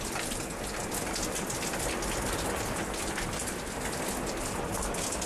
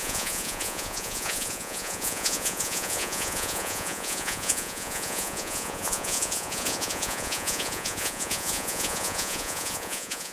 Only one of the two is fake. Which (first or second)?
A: second